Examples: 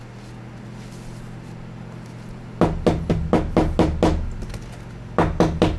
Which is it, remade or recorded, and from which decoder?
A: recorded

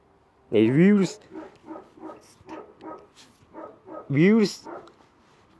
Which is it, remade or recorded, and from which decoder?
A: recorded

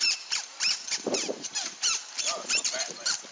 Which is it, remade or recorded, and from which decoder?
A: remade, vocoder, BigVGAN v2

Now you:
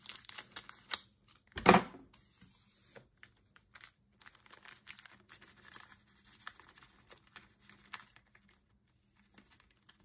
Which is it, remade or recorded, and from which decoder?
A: recorded